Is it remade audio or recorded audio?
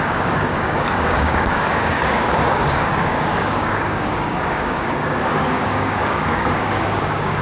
remade